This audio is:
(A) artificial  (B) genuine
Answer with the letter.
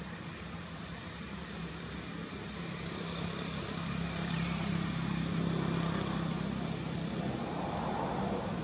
B